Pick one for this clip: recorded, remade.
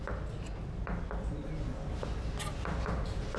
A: recorded